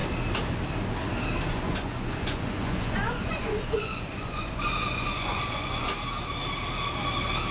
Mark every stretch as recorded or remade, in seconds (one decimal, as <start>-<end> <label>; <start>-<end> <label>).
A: 0.0-1.5 recorded; 1.5-5.9 remade; 5.9-7.5 recorded